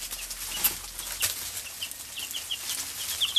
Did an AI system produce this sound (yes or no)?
no